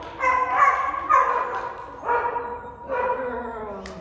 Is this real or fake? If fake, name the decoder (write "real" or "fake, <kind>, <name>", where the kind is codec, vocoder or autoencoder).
real